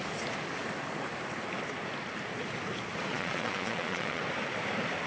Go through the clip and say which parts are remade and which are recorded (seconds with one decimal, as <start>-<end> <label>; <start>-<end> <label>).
0.0-3.1 recorded; 3.1-4.2 remade; 4.2-5.1 recorded